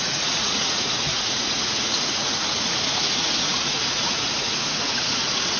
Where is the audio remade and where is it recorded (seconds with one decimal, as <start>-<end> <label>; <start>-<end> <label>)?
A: 0.0-5.6 remade